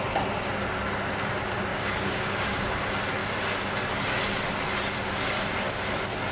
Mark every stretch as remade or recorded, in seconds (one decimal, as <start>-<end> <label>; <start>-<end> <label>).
0.0-1.7 recorded; 1.7-2.7 remade; 2.7-6.3 recorded